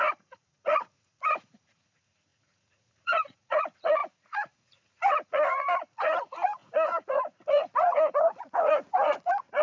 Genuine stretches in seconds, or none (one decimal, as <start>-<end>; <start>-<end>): none